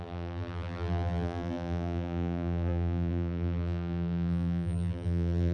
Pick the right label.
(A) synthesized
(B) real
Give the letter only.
A